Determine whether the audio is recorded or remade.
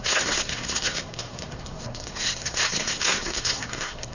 remade